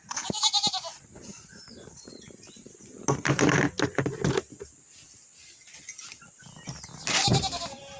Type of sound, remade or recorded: recorded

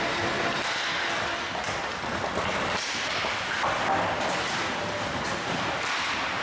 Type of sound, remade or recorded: recorded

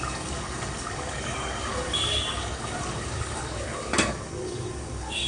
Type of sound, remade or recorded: remade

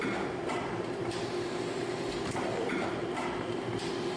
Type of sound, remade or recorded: remade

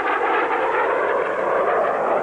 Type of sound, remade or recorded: recorded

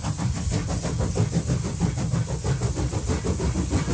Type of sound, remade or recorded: recorded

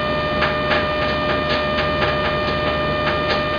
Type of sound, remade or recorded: recorded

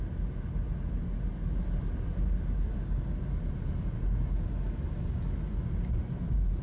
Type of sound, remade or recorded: recorded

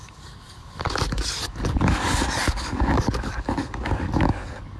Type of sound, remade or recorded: remade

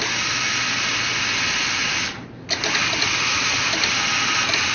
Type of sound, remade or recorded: recorded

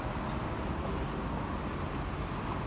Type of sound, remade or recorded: recorded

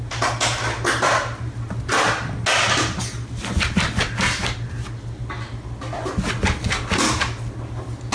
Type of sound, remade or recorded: recorded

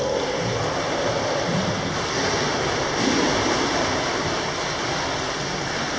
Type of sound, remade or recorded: recorded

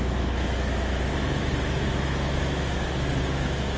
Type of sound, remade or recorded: remade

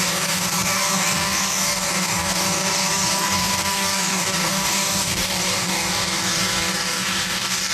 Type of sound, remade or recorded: remade